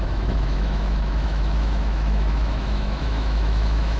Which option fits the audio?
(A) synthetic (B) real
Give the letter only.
A